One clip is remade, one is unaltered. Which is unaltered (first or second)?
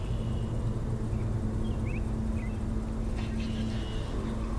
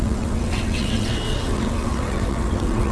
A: first